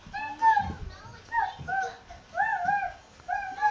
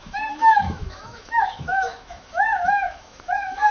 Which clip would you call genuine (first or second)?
first